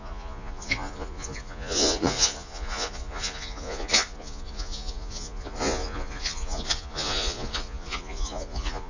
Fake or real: fake